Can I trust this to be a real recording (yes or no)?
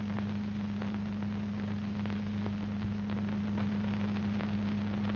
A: yes